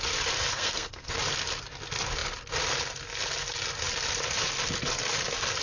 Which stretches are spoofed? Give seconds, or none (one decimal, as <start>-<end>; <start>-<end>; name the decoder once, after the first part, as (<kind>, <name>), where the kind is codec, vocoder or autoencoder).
0.5-1.2 (codec, SNAC)